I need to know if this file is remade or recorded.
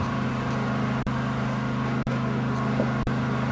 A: recorded